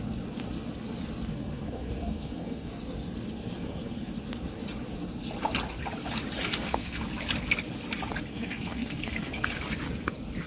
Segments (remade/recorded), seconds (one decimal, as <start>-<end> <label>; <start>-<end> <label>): 0.0-1.3 recorded; 1.3-2.7 remade; 2.7-3.4 recorded; 3.4-4.1 remade; 4.1-6.4 recorded; 6.4-7.0 remade; 7.0-8.3 recorded; 8.3-9.6 remade; 9.6-10.5 recorded